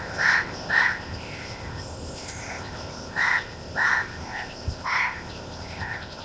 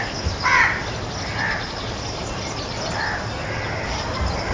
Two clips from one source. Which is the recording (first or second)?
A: second